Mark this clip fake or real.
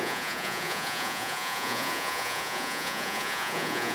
fake